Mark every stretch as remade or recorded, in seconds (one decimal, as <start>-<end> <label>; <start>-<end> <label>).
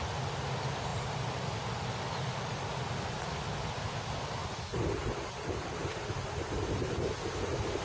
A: 0.0-0.9 recorded; 0.9-3.6 remade; 3.6-4.4 recorded; 4.4-5.1 remade; 5.1-7.8 recorded